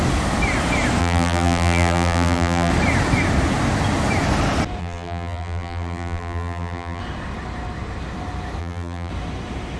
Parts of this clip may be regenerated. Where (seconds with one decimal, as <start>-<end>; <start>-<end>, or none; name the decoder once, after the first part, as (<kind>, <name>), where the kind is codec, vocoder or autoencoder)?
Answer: 1.0-2.7 (vocoder, BigVGAN v2); 4.8-7.0; 8.6-9.1